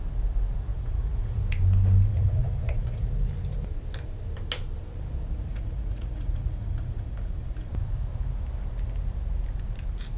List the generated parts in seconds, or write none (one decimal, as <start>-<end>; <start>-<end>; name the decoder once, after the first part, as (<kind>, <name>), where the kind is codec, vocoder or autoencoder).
0.7-1.4 (vocoder, Vocos); 2.1-3.1; 5.5-7.7